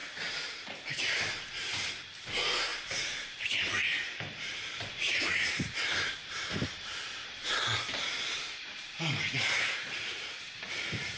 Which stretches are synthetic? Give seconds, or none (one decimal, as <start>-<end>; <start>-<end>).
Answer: 0.0-1.9; 2.7-7.5; 8.4-11.2